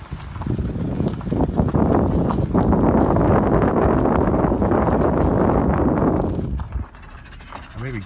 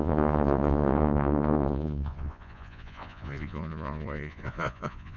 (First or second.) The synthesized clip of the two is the second